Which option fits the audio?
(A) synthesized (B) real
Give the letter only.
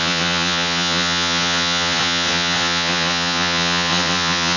A